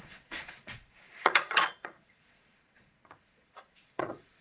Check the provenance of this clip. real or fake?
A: fake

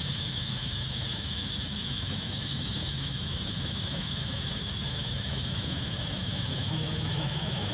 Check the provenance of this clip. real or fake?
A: fake